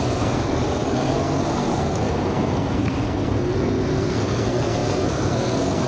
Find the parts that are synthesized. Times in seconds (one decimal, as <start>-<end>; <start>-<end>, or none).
0.0-5.9